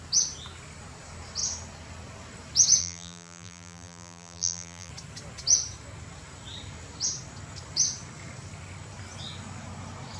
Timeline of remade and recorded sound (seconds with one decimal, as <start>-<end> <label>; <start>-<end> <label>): 0.0-2.8 recorded; 2.8-4.9 remade; 4.9-10.2 recorded